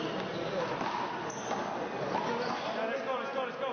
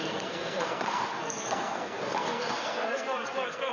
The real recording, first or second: first